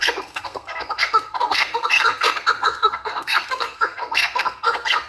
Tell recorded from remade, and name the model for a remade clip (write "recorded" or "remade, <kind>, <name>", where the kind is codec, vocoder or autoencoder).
remade, codec, SNAC